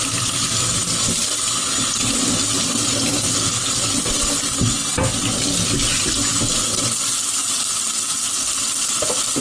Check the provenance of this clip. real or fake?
real